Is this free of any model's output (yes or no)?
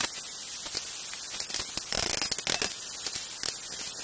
yes